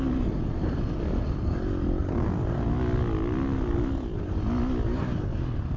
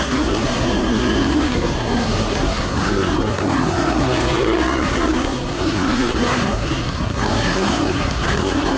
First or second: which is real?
first